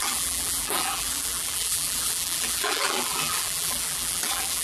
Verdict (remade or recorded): remade